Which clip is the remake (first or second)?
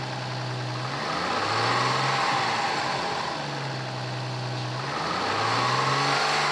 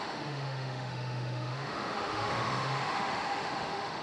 second